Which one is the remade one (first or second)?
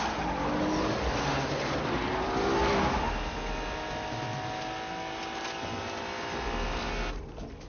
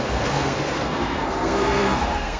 second